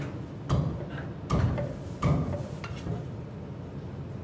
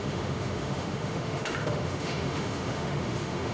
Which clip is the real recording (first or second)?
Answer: first